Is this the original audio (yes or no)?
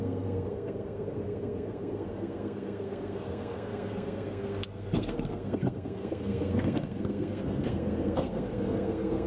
no